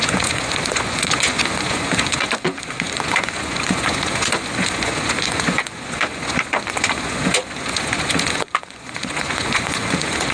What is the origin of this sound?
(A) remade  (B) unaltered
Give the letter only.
A